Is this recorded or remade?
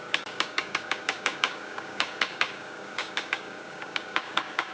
remade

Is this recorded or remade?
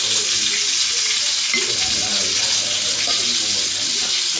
recorded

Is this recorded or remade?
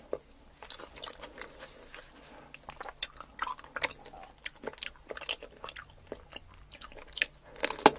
recorded